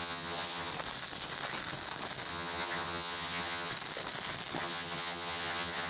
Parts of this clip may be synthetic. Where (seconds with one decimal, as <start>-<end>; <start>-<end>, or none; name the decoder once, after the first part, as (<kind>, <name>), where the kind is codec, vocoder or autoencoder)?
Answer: 0.0-0.7 (vocoder, HiFi-GAN); 2.3-3.7; 4.6-5.9